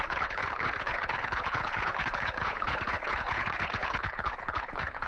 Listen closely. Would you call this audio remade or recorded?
remade